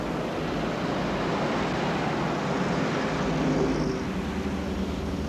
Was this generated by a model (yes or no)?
no